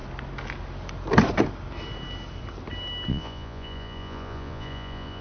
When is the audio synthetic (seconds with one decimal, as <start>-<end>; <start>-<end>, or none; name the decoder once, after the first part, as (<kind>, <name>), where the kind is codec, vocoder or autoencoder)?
3.1-5.2 (vocoder, Vocos)